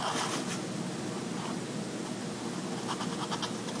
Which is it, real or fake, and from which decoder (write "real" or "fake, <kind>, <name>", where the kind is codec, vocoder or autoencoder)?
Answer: real